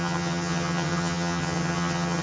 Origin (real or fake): fake